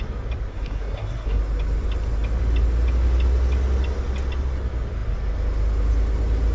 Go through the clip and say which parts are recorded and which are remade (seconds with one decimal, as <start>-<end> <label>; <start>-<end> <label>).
0.0-0.5 recorded; 0.5-1.4 remade; 1.4-6.5 recorded